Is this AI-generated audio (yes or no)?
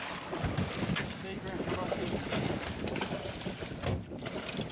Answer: no